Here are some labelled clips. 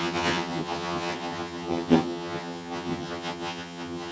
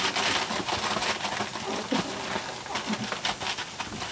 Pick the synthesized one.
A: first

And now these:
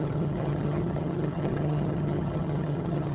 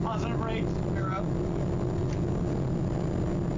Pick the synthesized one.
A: first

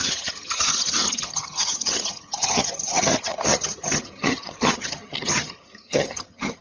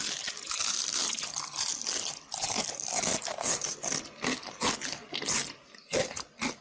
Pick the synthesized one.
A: first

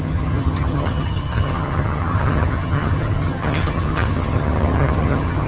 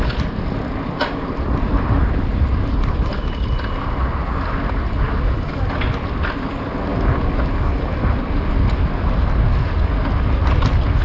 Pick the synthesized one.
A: first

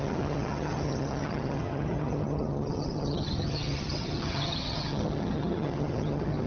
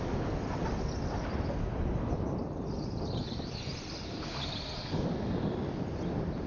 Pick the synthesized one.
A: first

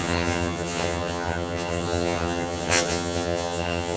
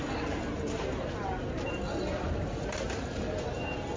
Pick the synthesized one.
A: first